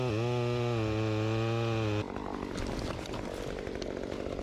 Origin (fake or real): real